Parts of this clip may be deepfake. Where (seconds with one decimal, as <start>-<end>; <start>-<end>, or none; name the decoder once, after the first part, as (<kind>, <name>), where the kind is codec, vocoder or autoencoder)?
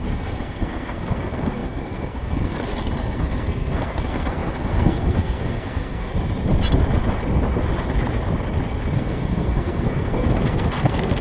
0.0-6.1 (codec, SNAC); 9.0-11.2